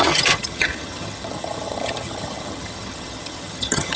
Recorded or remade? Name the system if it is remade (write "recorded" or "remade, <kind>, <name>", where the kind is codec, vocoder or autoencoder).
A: remade, vocoder, HiFi-GAN